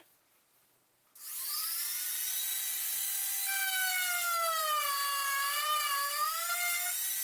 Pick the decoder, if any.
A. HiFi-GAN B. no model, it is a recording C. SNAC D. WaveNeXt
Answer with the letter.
B